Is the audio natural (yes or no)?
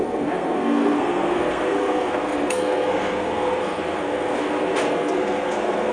no